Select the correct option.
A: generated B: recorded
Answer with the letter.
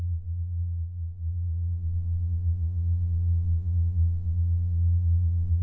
A